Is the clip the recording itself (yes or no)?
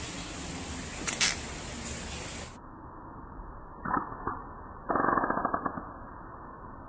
yes